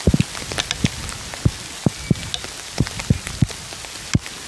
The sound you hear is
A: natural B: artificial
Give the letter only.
A